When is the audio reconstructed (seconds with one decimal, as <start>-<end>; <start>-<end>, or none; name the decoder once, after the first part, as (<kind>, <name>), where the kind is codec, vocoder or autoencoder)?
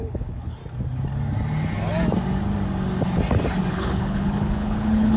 0.0-0.6 (codec, HILCodec); 3.7-5.2